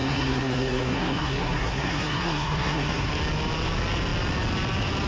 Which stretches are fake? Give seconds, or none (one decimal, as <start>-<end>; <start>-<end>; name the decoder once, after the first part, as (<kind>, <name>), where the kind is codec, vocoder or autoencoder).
0.0-3.1 (codec, SNAC)